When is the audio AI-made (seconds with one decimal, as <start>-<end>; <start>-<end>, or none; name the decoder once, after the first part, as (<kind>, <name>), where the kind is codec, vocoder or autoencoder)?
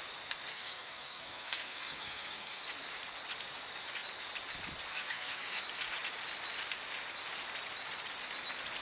0.5-2.6 (codec, SNAC); 4.9-5.6